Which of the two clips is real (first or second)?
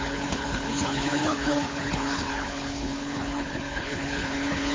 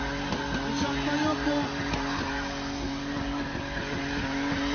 second